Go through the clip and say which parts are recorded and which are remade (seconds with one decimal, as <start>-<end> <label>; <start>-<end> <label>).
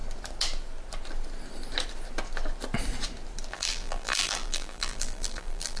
0.0-3.5 recorded; 3.5-5.8 remade